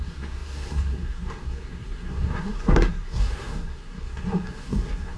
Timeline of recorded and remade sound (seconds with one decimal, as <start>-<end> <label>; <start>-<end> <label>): 0.0-5.2 remade